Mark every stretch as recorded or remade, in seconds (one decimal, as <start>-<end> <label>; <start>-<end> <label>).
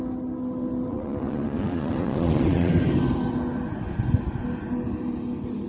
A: 0.0-0.9 recorded; 0.9-2.7 remade; 2.7-5.7 recorded